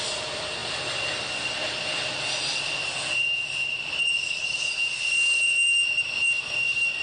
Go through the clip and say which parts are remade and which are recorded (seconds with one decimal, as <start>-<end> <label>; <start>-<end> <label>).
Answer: 0.0-7.0 remade